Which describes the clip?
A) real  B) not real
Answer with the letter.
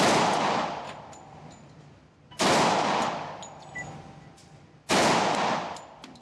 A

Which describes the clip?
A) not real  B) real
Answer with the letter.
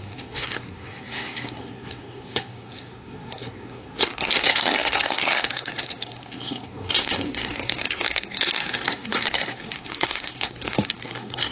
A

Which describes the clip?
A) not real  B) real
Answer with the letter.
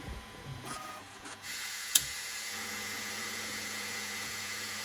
A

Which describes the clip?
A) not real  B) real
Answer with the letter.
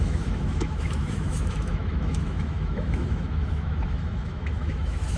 A